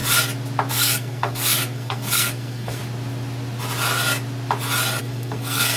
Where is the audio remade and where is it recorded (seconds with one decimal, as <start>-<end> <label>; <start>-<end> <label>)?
0.0-0.7 recorded; 0.7-2.8 remade; 2.8-5.0 recorded; 5.0-5.8 remade